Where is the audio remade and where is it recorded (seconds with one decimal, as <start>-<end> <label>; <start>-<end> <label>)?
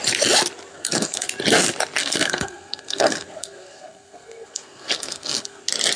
0.0-0.7 recorded; 0.7-1.3 remade; 1.3-2.0 recorded; 2.0-5.6 remade; 5.6-6.0 recorded